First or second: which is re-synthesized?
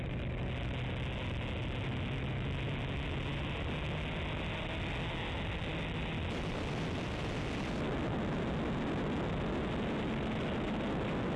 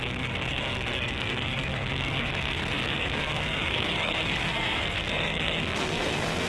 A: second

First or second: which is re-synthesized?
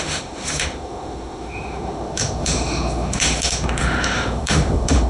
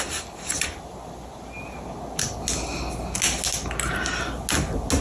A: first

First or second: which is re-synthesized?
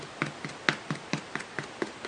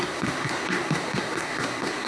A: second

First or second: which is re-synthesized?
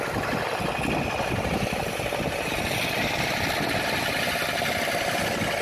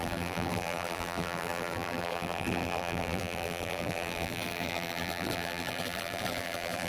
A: second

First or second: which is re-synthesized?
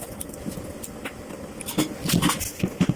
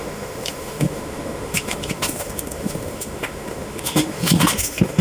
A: second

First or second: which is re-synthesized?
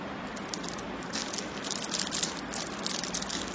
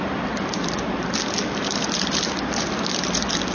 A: second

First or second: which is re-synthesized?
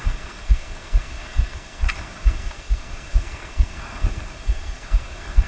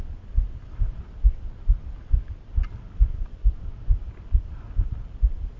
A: first